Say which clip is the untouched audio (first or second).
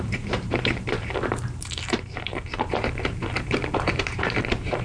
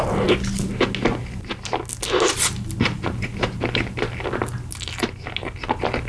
second